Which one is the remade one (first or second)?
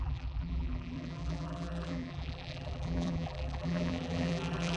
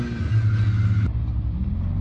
first